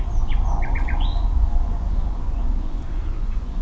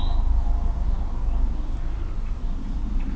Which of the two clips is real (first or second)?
second